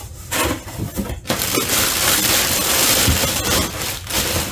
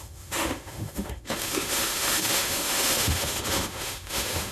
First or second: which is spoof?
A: second